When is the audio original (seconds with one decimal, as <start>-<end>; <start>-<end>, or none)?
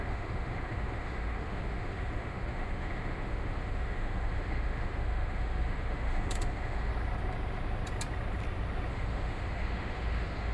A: 6.9-8.9